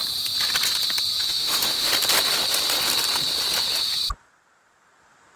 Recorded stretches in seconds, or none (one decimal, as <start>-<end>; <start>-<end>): 0.0-1.2; 1.9-5.4